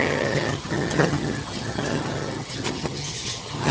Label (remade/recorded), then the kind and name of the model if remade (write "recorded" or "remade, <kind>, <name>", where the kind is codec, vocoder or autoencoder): remade, vocoder, HiFi-GAN